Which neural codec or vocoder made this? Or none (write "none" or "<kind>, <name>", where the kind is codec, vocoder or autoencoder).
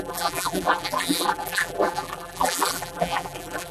vocoder, BigVGAN v2